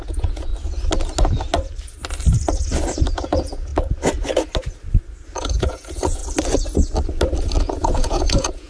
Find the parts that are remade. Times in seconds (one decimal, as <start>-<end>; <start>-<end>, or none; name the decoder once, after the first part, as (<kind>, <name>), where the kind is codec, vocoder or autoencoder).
0.0-0.5 (vocoder, Vocos); 3.1-3.7; 5.4-6.2; 7.6-8.7